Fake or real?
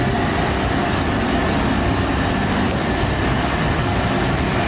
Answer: real